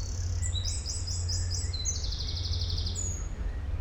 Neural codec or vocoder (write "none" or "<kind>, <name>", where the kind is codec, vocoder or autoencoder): none